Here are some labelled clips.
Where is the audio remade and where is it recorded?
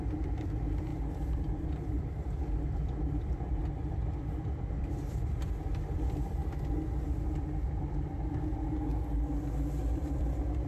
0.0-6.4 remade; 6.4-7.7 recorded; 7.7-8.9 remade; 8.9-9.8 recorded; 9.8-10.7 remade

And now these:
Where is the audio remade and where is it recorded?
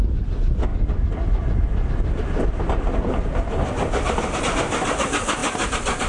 0.0-6.1 recorded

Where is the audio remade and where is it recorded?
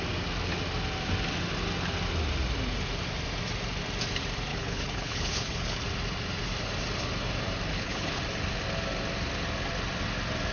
0.0-4.5 recorded; 4.5-5.8 remade; 5.8-7.7 recorded; 7.7-8.2 remade; 8.2-10.5 recorded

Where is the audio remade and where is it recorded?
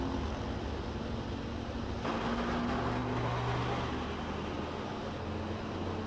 0.0-6.1 recorded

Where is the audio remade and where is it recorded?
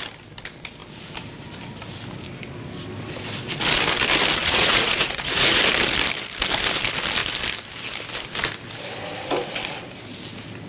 0.0-4.4 recorded; 4.4-5.6 remade; 5.6-10.7 recorded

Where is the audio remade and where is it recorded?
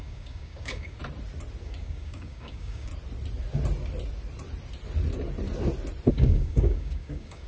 0.0-1.0 remade; 1.0-1.6 recorded; 1.6-2.9 remade; 2.9-6.1 recorded; 6.1-7.5 remade